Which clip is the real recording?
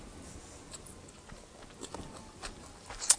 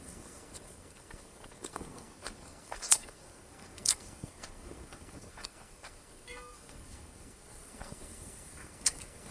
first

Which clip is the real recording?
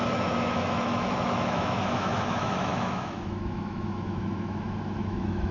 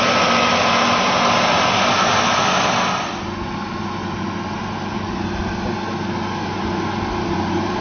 second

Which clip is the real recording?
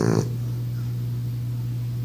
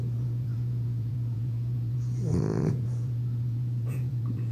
first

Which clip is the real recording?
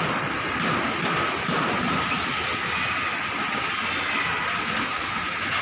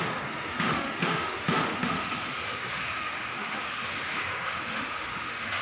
first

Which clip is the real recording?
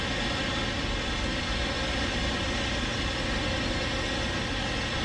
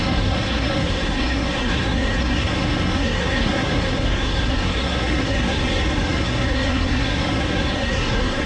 first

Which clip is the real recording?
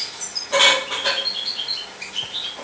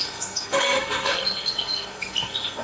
first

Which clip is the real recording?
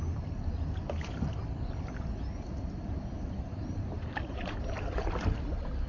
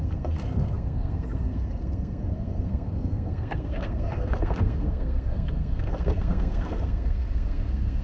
first